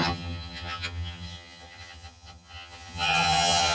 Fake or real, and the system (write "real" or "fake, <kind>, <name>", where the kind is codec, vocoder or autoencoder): fake, vocoder, HiFi-GAN